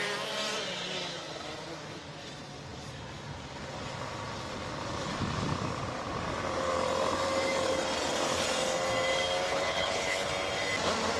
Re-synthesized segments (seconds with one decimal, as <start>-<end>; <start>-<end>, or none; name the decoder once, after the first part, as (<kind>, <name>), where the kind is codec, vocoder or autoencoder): 9.5-10.3 (codec, HILCodec)